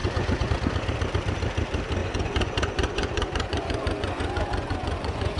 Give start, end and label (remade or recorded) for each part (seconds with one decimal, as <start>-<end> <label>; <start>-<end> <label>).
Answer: 0.0-0.5 remade; 0.5-2.0 recorded; 2.0-5.4 remade